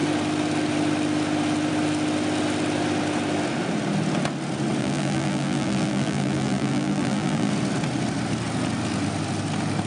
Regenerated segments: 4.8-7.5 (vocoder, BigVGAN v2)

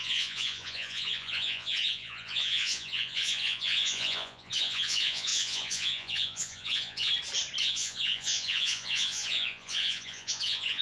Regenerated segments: 0.0-7.1 (vocoder, Vocos); 7.6-10.8